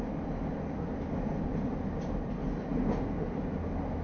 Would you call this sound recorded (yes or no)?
yes